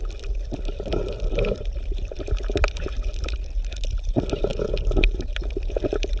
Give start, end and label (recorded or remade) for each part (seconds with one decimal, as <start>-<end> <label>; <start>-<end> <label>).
0.0-6.2 recorded